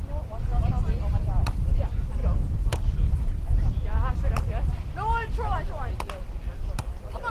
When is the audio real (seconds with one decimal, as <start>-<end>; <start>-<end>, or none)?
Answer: 0.5-1.1; 2.2-4.1; 4.5-6.0